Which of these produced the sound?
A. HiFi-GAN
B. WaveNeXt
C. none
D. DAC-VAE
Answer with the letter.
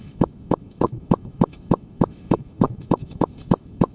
D